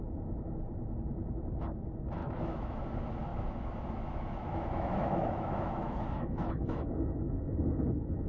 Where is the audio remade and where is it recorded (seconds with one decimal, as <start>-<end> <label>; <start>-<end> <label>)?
0.0-2.2 recorded; 2.2-2.8 remade; 2.8-3.3 recorded; 3.3-8.3 remade